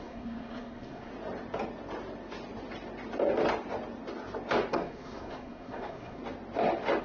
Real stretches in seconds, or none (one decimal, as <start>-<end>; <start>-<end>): 1.1-4.7; 6.2-7.0